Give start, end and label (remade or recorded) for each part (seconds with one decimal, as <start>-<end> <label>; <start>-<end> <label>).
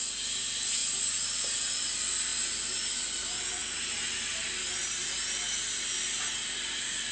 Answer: 0.0-7.1 recorded